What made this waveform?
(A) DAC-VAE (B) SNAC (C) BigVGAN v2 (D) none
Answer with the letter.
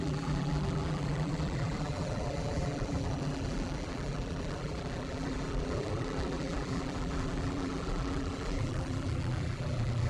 C